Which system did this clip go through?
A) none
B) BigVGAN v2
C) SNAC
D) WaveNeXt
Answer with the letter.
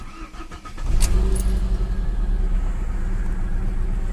A